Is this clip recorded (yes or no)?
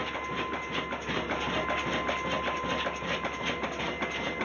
yes